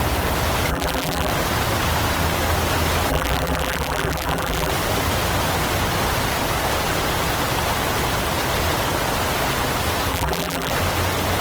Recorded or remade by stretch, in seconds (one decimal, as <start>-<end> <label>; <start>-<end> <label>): 0.0-0.7 recorded; 0.7-1.3 remade; 1.3-3.1 recorded; 3.1-4.7 remade; 4.7-10.1 recorded; 10.1-10.7 remade; 10.7-11.4 recorded